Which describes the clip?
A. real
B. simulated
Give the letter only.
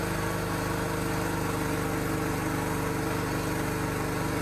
A